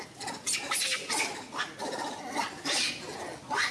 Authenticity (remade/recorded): recorded